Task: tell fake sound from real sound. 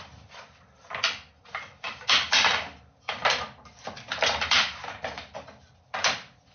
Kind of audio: real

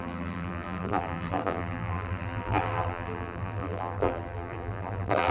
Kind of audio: fake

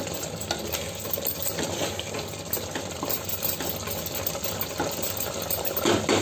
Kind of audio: real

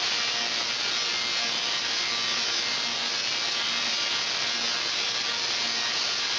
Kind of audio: real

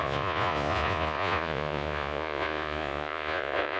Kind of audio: fake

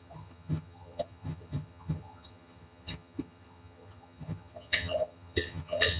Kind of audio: fake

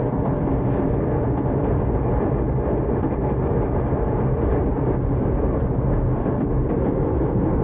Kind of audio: real